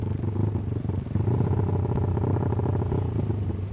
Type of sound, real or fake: real